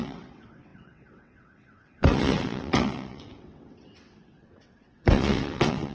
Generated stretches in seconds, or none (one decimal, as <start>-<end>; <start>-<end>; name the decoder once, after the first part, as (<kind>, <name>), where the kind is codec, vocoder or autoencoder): 0.0-5.9 (vocoder, WaveNeXt)